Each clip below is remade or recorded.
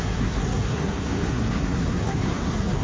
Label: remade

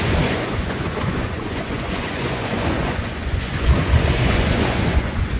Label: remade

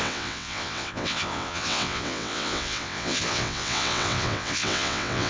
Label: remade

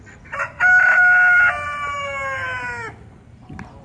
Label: recorded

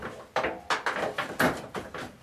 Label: recorded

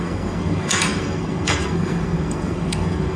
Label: remade